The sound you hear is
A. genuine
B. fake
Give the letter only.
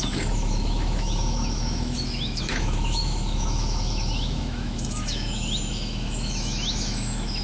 B